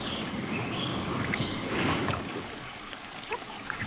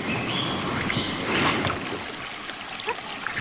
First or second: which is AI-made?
first